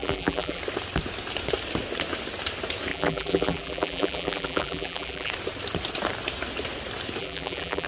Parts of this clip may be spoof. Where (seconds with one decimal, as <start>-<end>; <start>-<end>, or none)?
0.0-0.6; 2.9-5.3; 7.2-7.9